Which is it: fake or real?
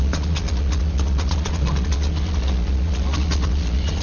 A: fake